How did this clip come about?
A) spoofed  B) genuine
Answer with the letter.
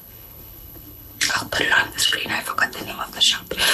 A